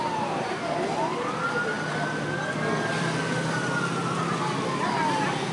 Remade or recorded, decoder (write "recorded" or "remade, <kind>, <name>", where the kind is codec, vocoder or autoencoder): recorded